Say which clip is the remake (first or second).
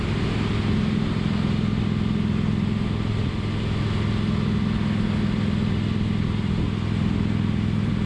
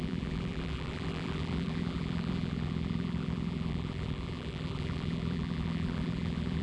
second